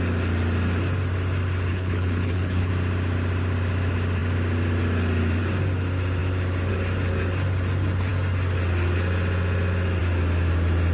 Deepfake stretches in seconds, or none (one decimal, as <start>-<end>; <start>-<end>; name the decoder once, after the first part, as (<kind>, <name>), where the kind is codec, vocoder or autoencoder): 1.7-2.7 (codec, HILCodec)